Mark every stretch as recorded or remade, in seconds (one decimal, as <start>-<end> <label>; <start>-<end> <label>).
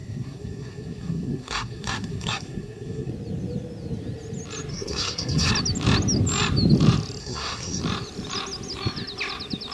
0.0-3.1 remade; 3.1-4.7 recorded; 4.7-5.5 remade; 5.5-7.2 recorded; 7.2-7.8 remade; 7.8-9.7 recorded